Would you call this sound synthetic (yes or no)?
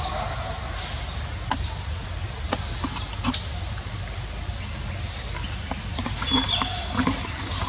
no